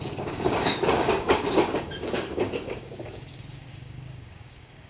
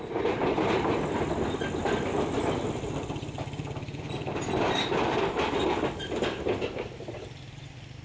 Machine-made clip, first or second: first